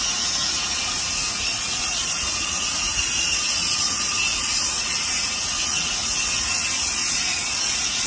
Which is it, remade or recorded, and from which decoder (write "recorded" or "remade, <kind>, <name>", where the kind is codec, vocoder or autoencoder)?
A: remade, vocoder, Vocos